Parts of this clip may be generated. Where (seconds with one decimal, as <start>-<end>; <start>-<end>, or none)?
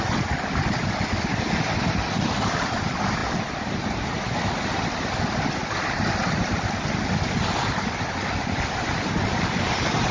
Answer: none